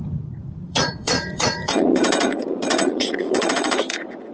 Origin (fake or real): fake